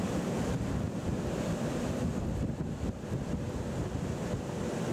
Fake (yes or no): no